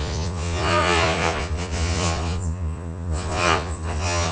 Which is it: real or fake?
fake